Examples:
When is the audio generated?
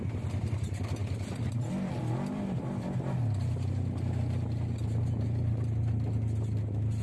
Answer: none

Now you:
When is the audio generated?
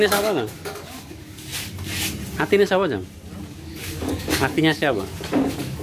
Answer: 0.0-1.5 (codec, DAC); 3.5-5.8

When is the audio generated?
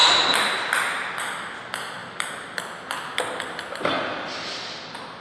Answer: none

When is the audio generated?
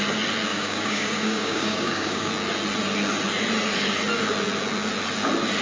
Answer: 0.5-2.3 (codec, DAC)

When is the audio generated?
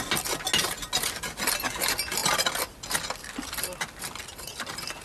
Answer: none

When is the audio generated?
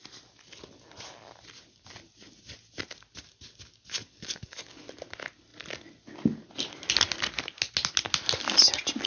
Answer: 4.0-4.8 (codec, DAC)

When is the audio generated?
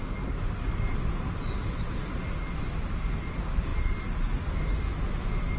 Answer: none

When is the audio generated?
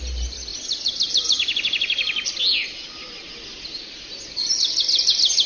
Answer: none